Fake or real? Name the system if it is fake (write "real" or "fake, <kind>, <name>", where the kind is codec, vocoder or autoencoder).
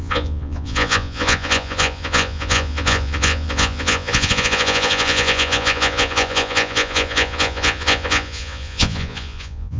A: fake, vocoder, Vocos